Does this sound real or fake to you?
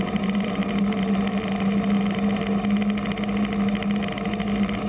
real